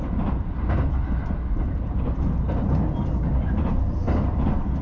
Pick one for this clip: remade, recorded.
recorded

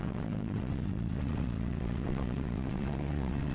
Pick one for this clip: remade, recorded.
remade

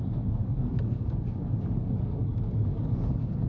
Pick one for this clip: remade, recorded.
remade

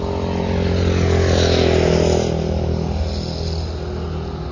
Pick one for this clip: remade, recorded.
recorded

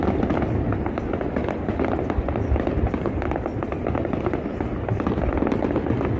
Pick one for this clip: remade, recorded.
recorded